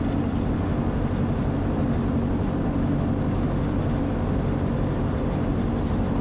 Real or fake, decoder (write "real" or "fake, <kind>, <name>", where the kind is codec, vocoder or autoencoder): real